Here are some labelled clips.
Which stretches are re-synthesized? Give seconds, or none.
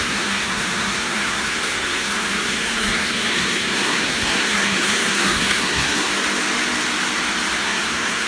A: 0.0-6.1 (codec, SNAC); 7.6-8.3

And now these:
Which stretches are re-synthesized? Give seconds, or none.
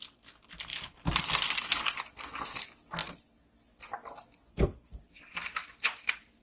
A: 4.5-5.0 (codec, SNAC)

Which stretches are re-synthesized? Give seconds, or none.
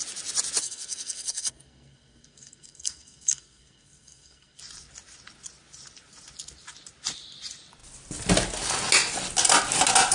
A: 0.6-4.6 (codec, SNAC)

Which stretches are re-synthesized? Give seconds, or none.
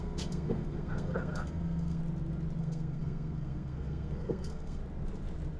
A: 0.0-2.0 (codec, SNAC); 2.6-4.8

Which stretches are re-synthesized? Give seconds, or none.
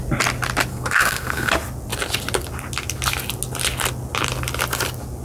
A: 0.7-1.5 (codec, SNAC)